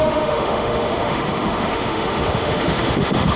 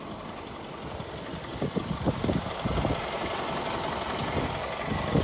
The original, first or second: second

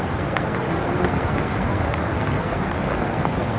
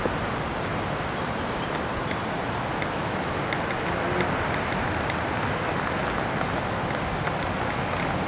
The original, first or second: second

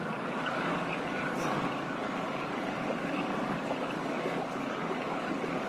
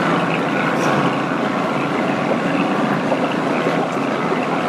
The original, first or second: second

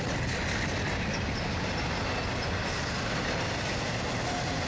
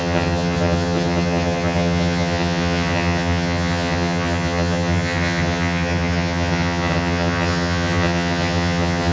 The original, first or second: first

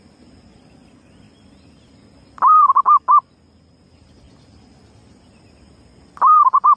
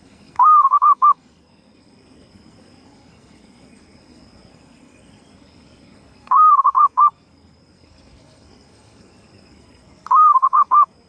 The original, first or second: first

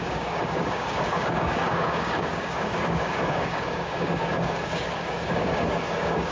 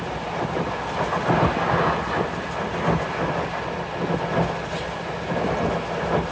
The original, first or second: second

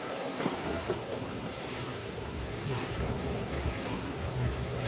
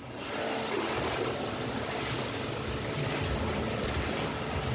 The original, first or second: second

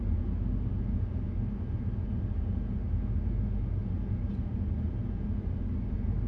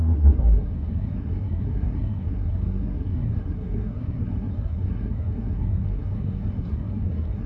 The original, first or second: first